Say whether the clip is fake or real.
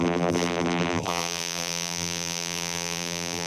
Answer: fake